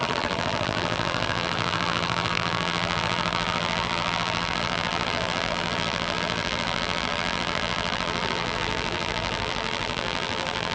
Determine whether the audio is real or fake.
fake